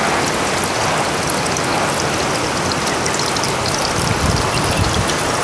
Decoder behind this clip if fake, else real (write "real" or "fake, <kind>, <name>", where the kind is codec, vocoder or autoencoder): real